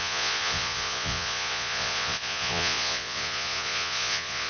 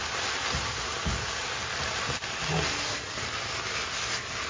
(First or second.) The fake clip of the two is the first